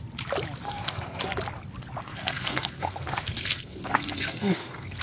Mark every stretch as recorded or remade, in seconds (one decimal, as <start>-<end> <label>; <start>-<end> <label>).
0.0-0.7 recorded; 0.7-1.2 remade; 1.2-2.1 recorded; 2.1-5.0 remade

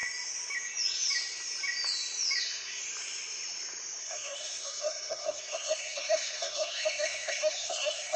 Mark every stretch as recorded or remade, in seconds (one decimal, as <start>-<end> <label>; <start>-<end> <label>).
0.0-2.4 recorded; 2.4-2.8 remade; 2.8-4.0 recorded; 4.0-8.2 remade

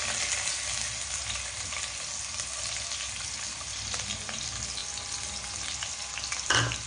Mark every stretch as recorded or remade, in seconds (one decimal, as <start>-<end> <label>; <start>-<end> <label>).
0.0-6.9 recorded

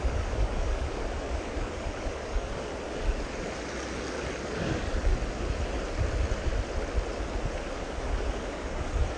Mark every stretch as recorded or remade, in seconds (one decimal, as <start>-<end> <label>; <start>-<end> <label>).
0.0-2.7 remade; 2.7-4.4 recorded; 4.4-5.1 remade; 5.1-7.7 recorded; 7.7-9.2 remade